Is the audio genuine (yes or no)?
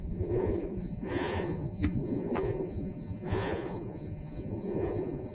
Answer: no